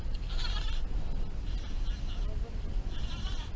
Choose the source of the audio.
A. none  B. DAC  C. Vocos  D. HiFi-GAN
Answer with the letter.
A